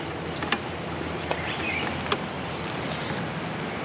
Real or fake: real